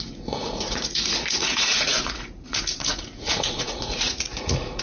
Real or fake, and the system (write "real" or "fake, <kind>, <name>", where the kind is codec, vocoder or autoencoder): fake, vocoder, Vocos